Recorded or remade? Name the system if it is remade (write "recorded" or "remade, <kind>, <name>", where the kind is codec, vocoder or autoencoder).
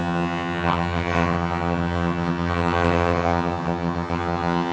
remade, vocoder, HiFi-GAN